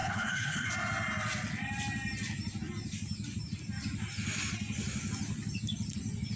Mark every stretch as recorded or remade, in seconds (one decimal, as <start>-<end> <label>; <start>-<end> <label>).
0.0-0.7 remade; 0.7-6.4 recorded